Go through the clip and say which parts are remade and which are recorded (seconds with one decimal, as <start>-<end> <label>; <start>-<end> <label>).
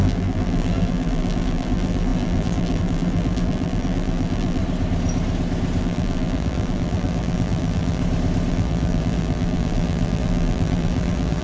0.0-4.6 remade; 4.6-5.8 recorded; 5.8-8.0 remade; 8.0-8.5 recorded; 8.5-11.4 remade